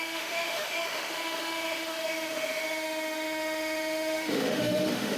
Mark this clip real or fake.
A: fake